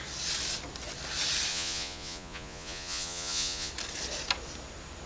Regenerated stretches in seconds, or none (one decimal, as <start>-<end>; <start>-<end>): 1.5-3.7